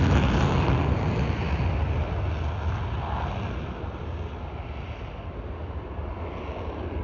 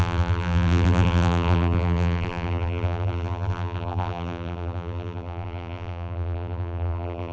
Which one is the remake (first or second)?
second